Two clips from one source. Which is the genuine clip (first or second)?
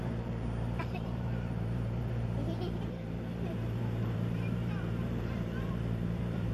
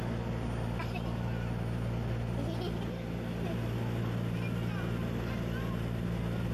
second